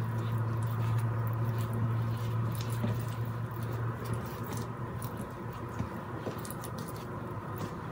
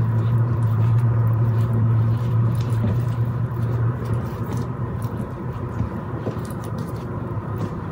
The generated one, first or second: second